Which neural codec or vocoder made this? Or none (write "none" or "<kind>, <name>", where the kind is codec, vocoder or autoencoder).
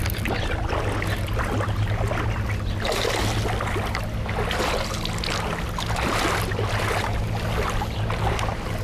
none